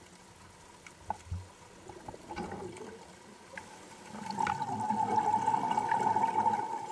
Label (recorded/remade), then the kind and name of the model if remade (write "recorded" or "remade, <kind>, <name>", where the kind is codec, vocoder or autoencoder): recorded